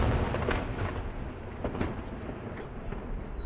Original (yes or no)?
yes